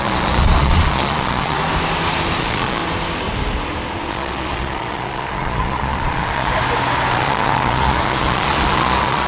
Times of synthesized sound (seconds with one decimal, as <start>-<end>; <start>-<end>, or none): 0.0-1.6; 2.4-2.8; 4.1-6.5; 7.1-9.3